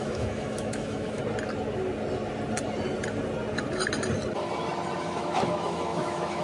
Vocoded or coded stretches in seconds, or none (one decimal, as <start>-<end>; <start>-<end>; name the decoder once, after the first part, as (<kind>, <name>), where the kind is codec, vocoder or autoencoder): 0.0-1.2 (autoencoder, DAC-VAE); 5.0-6.4